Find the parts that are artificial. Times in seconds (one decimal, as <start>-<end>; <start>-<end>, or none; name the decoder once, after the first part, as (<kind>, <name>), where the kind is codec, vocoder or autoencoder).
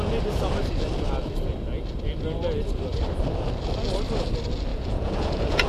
4.7-5.7 (vocoder, Vocos)